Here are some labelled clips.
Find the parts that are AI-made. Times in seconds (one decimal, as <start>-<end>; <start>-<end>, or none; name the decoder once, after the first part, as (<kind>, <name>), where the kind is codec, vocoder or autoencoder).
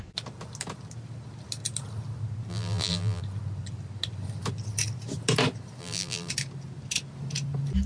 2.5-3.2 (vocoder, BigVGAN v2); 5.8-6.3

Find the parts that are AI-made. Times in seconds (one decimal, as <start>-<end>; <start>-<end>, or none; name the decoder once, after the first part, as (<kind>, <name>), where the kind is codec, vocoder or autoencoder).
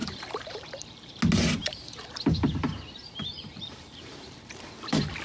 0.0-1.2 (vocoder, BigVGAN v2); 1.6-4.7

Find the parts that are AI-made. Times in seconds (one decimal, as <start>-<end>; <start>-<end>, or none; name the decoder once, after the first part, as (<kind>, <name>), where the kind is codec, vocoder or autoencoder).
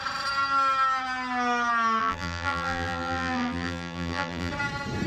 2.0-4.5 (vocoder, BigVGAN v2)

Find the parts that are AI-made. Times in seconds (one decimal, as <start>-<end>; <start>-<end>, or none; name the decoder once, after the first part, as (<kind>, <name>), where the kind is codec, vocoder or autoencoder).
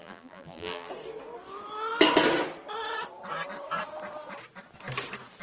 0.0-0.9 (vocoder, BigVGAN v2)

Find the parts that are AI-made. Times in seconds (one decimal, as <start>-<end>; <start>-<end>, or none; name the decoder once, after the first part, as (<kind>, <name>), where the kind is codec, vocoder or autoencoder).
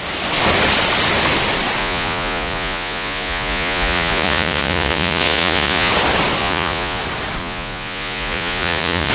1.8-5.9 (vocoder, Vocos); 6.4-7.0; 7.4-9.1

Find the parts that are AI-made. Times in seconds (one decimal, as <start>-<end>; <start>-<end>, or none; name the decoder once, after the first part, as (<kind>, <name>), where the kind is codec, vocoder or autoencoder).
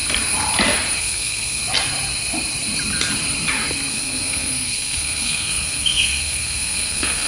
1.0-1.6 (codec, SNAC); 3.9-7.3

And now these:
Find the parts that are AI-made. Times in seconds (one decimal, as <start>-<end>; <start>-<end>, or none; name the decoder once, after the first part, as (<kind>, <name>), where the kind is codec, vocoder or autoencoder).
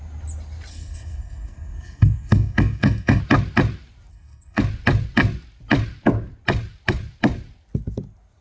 0.7-3.2 (codec, SNAC); 4.1-4.6